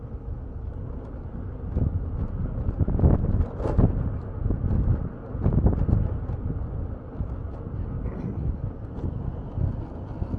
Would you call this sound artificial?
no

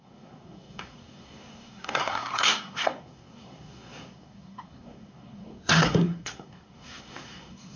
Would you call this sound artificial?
yes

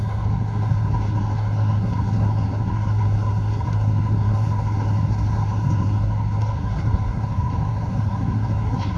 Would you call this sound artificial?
yes